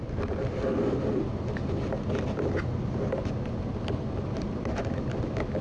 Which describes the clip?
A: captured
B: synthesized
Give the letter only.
A